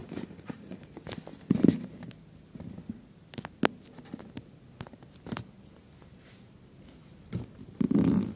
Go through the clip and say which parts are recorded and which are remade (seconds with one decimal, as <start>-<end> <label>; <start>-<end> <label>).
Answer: 0.0-0.9 remade; 0.9-8.4 recorded